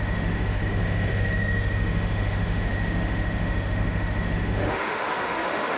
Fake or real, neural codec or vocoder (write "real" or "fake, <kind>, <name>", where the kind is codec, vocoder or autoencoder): fake, autoencoder, DAC-VAE